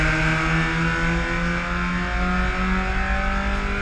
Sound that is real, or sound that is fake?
real